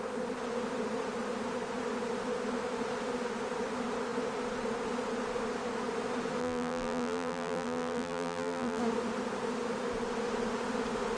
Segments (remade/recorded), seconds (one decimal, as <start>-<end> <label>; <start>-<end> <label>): 0.0-6.4 recorded; 6.4-8.8 remade; 8.8-11.2 recorded